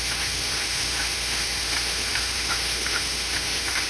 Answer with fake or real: fake